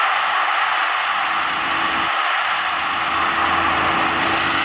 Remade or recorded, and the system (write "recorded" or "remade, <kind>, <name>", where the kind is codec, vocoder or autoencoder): recorded